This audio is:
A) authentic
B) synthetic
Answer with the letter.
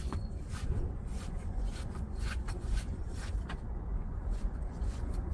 B